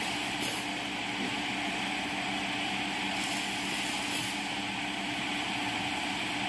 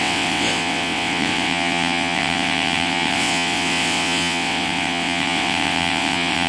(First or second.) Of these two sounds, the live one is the first